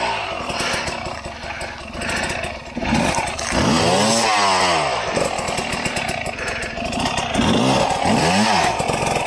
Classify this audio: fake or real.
real